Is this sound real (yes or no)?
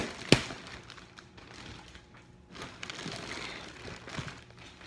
yes